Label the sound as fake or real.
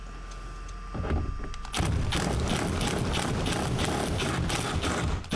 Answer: real